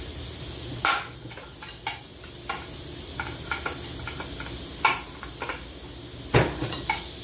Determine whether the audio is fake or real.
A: real